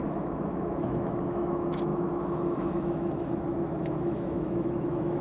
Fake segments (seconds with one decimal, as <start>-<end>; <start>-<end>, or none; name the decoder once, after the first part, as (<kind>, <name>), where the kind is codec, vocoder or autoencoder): 0.0-5.2 (autoencoder, DAC-VAE)